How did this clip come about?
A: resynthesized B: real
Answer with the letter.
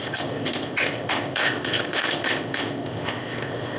A